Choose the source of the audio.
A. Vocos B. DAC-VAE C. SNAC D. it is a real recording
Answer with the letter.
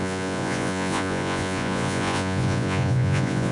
A